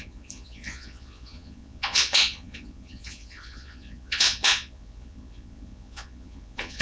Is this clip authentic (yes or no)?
no